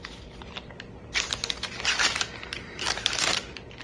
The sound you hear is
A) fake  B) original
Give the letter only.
B